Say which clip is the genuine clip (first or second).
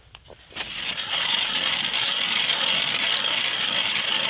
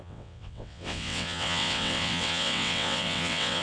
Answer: first